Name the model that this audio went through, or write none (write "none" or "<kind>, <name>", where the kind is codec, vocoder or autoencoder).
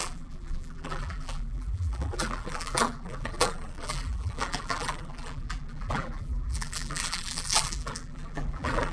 vocoder, BigVGAN v2